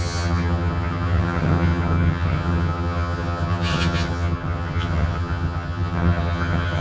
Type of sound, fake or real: fake